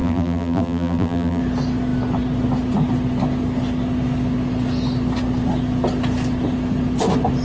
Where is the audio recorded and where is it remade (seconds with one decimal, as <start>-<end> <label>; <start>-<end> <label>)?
0.0-1.4 remade; 1.4-7.4 recorded